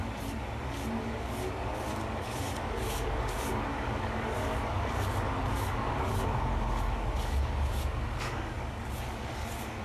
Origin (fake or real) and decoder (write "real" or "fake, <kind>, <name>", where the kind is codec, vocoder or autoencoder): fake, codec, DAC